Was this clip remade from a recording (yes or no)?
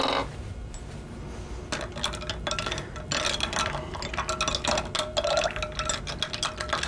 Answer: no